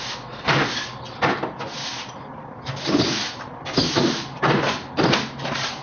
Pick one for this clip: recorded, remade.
recorded